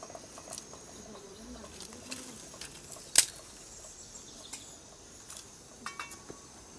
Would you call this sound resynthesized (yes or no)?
no